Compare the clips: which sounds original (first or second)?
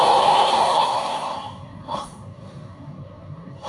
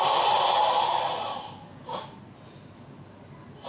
second